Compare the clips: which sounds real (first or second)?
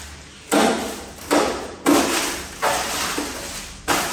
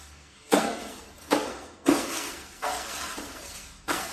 first